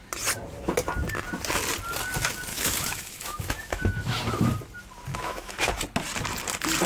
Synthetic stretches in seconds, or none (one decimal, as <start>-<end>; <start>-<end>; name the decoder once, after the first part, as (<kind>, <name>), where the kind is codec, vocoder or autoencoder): 2.5-4.2 (autoencoder, DAC-VAE); 5.1-5.7